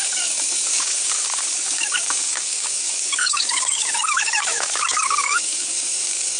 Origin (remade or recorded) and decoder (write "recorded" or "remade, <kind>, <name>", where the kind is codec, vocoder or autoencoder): remade, codec, DAC